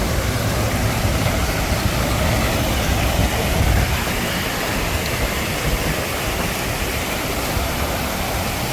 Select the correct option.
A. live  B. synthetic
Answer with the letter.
A